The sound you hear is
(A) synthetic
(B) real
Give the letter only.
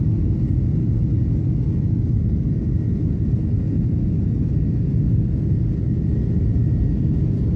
B